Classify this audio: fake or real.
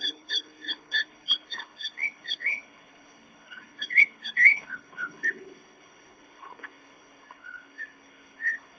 fake